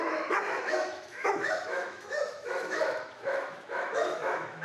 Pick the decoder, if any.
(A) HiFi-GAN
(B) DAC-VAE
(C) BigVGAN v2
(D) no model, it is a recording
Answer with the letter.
B